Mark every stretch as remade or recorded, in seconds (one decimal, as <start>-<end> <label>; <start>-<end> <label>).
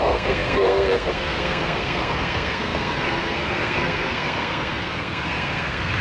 0.0-6.0 remade